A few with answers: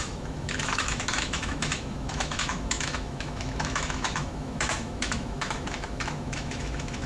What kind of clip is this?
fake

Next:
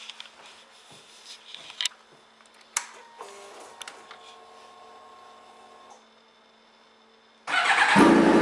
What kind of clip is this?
real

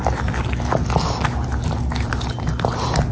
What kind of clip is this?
real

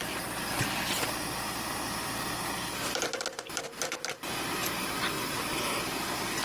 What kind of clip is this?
real